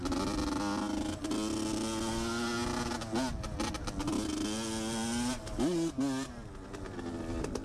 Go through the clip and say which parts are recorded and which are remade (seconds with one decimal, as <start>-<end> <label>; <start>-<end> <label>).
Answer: 0.0-7.6 recorded

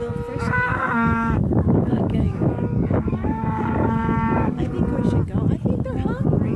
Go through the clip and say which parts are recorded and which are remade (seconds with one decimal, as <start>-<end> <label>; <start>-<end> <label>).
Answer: 0.0-0.7 recorded; 0.7-4.7 remade; 4.7-6.6 recorded

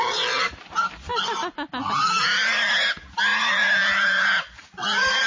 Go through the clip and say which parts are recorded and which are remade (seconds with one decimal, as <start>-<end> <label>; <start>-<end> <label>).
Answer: 0.0-5.3 recorded

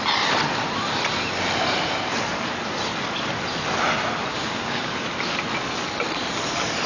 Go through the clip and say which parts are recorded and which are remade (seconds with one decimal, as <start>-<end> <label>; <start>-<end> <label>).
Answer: 0.0-4.3 recorded; 4.3-4.9 remade; 4.9-6.9 recorded

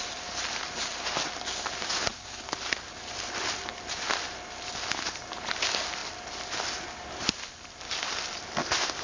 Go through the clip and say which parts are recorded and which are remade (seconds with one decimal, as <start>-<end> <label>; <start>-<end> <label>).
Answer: 0.0-9.0 recorded

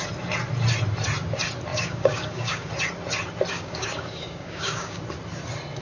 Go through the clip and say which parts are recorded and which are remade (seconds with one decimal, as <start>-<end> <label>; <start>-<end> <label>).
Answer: 0.0-1.7 recorded; 1.7-2.7 remade; 2.7-3.5 recorded; 3.5-5.0 remade; 5.0-5.8 recorded